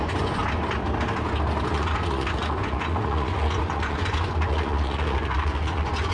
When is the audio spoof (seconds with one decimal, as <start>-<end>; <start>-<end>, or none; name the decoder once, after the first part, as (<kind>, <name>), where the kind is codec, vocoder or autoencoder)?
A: 0.0-0.4 (vocoder, Vocos); 1.7-6.1